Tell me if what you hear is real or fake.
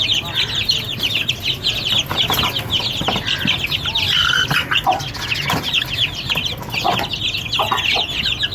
real